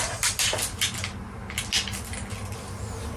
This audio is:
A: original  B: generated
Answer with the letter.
A